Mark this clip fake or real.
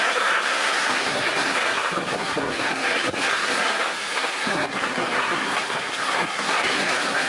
fake